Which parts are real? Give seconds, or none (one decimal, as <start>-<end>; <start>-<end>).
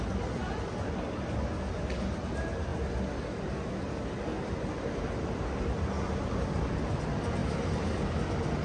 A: 0.0-8.6